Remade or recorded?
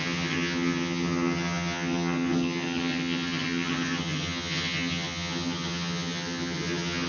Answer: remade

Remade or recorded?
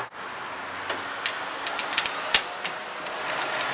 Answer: recorded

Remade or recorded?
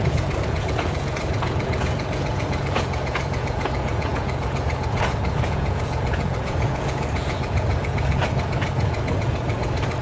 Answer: remade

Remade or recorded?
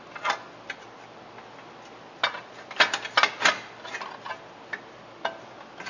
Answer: recorded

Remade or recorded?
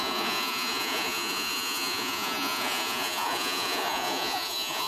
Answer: remade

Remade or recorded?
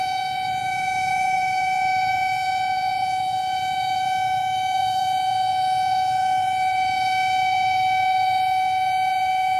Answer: remade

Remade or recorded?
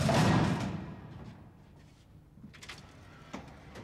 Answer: recorded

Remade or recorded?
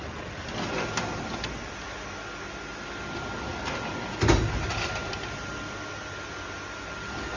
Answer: recorded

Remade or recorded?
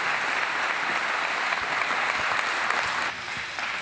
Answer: recorded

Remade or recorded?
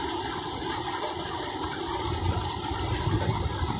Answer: recorded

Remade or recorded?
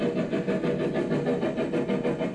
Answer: recorded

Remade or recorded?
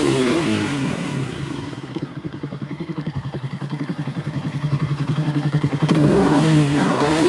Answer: remade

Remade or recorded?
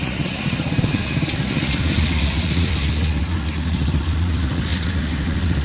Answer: remade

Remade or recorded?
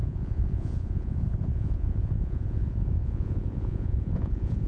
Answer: remade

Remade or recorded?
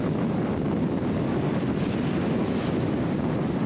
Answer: recorded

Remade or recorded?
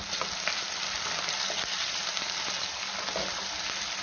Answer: recorded